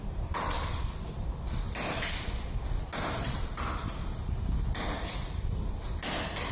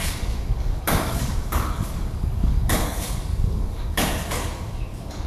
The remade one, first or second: second